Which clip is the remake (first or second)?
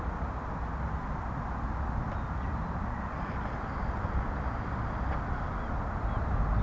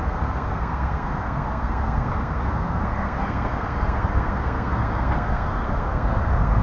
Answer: second